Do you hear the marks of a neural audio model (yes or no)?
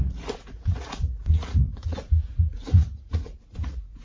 yes